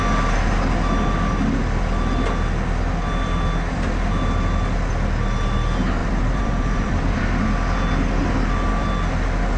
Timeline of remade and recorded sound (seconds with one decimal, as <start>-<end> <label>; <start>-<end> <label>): 0.0-6.0 recorded; 6.0-7.2 remade; 7.2-9.6 recorded